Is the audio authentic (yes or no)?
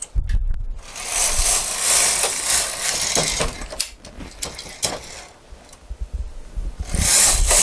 yes